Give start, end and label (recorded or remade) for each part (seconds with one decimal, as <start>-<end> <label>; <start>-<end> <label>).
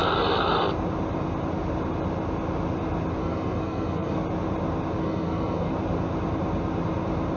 0.0-3.2 recorded; 3.2-4.2 remade; 4.2-5.0 recorded; 5.0-5.7 remade; 5.7-7.4 recorded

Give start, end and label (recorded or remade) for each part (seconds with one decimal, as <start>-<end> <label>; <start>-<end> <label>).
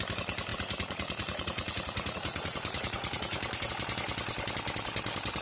0.0-0.5 recorded; 0.5-3.7 remade; 3.7-5.4 recorded